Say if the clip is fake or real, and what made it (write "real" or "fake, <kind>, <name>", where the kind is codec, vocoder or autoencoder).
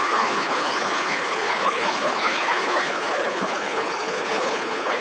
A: fake, codec, HILCodec